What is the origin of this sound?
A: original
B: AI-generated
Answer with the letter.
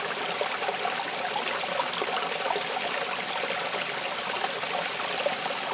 A